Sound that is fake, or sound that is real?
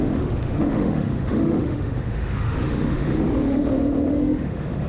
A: fake